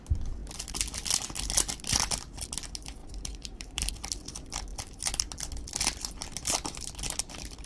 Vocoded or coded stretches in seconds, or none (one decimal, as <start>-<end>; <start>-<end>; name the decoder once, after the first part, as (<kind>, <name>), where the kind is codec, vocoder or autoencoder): 3.0-3.9 (vocoder, BigVGAN v2)